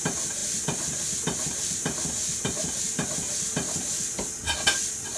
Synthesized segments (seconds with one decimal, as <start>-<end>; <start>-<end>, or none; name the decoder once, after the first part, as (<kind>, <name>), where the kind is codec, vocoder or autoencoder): 0.4-2.8 (vocoder, BigVGAN v2)